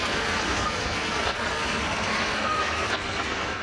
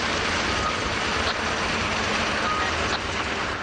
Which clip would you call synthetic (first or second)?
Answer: first